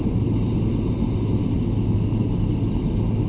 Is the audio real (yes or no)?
yes